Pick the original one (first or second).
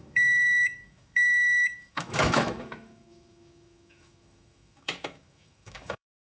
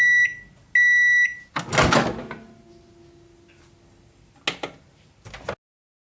second